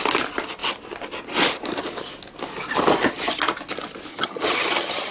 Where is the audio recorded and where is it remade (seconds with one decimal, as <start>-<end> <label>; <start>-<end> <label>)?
0.0-4.1 recorded; 4.1-5.1 remade